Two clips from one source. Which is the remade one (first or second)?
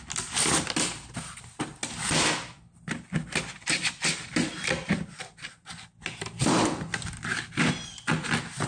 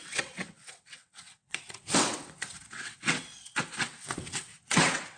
second